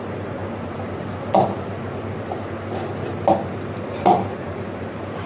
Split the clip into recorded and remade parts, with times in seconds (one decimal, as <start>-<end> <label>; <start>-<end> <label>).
0.0-0.4 remade; 0.4-3.6 recorded; 3.6-5.3 remade